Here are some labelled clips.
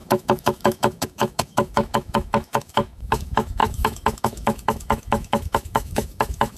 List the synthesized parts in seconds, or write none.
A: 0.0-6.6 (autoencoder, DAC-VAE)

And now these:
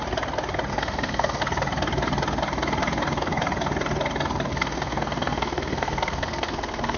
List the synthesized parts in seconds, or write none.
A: 0.7-1.4 (codec, SNAC); 4.5-7.0

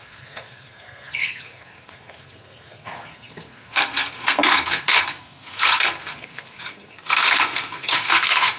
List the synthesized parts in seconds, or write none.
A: 0.0-8.6 (codec, SNAC)

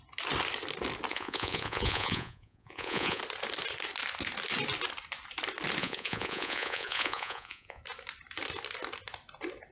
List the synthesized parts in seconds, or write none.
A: 1.1-3.2 (vocoder, Vocos); 5.8-7.8

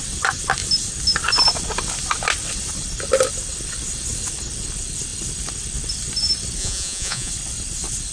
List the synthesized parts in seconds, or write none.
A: 6.6-7.3 (vocoder, Vocos)

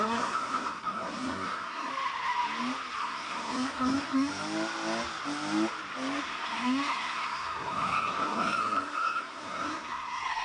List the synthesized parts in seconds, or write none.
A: 0.0-1.9 (codec, SNAC); 3.0-4.3; 6.2-10.4

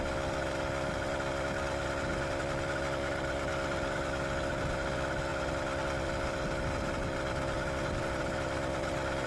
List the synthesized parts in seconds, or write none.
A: none